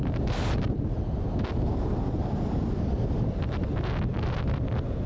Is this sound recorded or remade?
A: recorded